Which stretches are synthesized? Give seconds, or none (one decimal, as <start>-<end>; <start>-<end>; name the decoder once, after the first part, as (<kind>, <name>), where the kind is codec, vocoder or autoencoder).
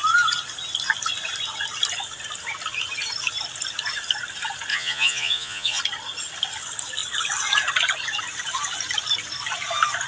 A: 4.7-5.8 (vocoder, Vocos)